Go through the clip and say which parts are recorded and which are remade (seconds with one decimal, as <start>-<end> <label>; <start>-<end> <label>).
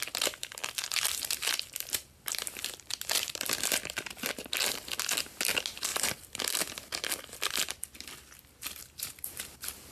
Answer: 0.0-0.6 recorded; 0.6-4.8 remade; 4.8-5.9 recorded; 5.9-6.4 remade; 6.4-9.9 recorded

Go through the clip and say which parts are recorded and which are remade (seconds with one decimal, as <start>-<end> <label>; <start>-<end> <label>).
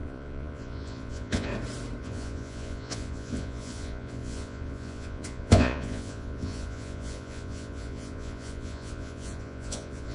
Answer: 0.0-1.5 remade; 1.5-2.0 recorded; 2.0-10.1 remade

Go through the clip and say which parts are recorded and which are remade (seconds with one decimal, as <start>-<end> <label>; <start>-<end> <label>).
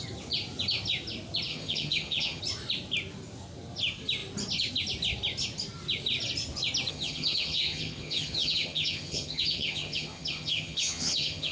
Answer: 0.0-1.5 recorded; 1.5-2.4 remade; 2.4-6.9 recorded; 6.9-11.5 remade